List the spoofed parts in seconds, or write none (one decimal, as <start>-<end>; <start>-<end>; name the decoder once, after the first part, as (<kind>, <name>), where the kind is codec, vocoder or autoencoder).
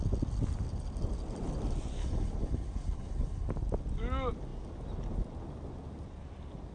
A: 2.0-3.5 (codec, HILCodec)